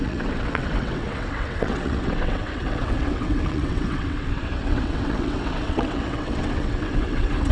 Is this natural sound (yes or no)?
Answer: no